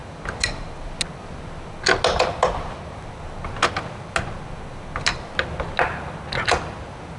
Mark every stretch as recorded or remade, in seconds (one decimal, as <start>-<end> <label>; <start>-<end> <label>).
0.0-7.2 recorded